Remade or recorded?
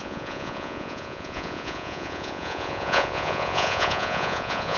remade